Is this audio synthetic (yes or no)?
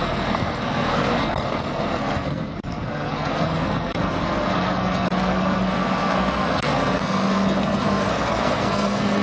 yes